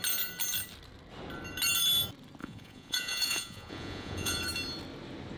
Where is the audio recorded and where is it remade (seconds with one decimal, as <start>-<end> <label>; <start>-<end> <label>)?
0.0-2.4 recorded; 2.4-4.4 remade; 4.4-5.4 recorded